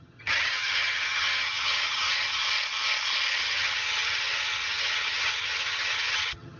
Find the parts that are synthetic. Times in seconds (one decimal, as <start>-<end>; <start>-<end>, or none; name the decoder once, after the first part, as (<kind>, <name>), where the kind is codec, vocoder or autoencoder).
0.0-2.4 (vocoder, HiFi-GAN); 3.4-6.6